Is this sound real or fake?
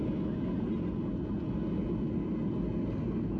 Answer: real